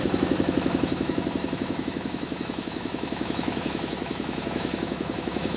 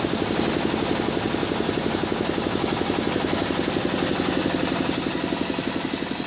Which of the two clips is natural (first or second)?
second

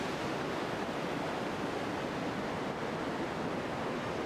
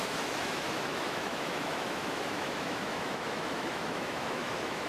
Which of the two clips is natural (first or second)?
first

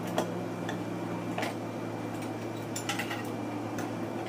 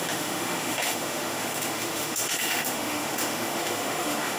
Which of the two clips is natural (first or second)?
first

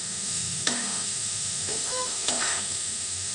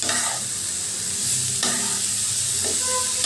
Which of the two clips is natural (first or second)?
second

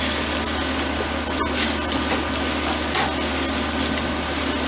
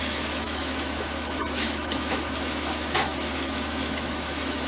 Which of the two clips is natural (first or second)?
first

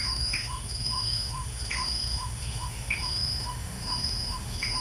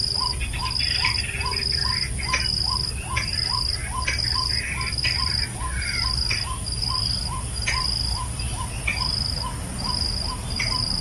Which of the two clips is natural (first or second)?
second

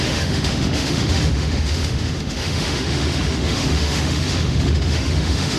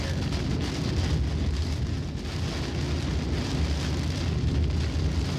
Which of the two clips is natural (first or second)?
second